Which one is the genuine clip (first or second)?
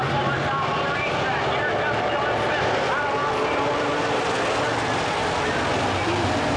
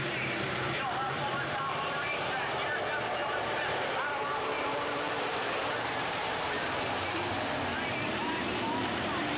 first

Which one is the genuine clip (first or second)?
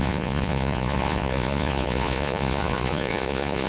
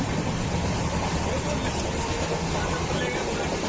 second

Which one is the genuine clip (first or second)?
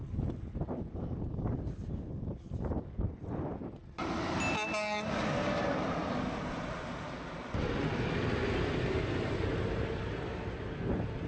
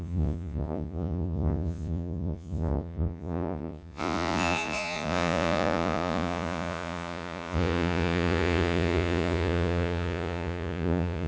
first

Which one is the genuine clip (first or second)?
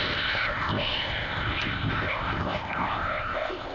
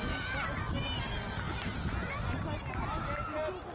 second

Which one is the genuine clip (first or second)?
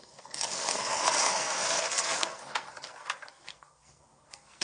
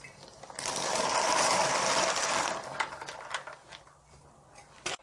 second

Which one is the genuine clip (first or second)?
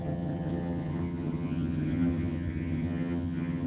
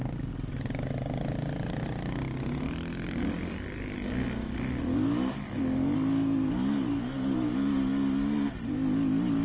second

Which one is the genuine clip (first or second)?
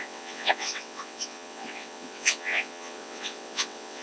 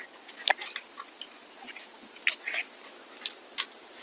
second